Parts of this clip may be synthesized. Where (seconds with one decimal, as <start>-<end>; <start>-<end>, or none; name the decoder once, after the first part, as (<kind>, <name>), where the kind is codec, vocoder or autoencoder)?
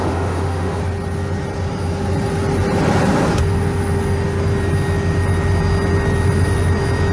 0.0-0.8 (autoencoder, DAC-VAE)